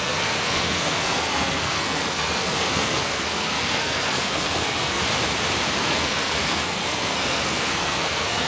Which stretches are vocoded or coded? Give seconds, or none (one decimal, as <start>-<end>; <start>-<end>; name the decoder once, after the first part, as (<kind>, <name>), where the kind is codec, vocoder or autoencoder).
0.0-5.0 (codec, SNAC); 5.8-8.5